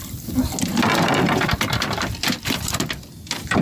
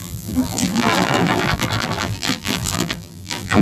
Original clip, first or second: first